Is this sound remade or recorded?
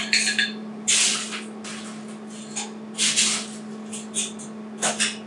recorded